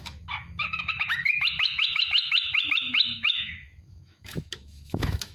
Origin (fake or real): fake